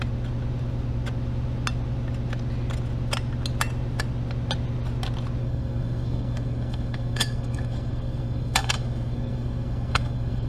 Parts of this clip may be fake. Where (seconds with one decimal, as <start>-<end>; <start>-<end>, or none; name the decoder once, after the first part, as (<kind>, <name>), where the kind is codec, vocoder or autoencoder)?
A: 5.4-10.5 (codec, SNAC)